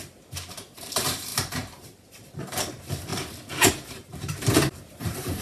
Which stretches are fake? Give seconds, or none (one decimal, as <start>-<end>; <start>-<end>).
0.0-3.1; 3.7-5.4